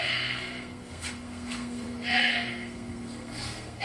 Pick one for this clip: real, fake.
fake